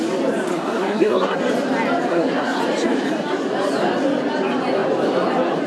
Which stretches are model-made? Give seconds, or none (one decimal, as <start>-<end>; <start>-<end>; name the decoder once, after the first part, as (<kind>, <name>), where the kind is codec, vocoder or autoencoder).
0.5-1.4 (codec, SNAC); 2.1-2.6